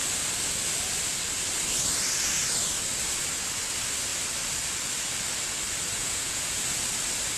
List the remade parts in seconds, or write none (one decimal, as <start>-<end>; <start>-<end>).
6.0-6.6